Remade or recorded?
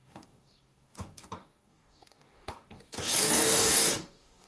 remade